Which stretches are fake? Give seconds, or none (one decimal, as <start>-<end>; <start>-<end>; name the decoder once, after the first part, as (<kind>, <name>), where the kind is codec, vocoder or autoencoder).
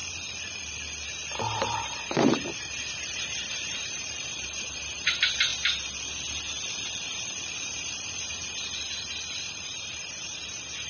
1.1-5.5 (vocoder, BigVGAN v2); 9.6-10.9